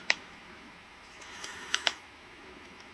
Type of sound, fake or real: fake